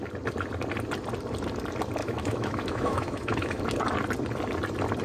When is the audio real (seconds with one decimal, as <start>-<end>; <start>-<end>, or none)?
0.0-2.0; 3.6-5.0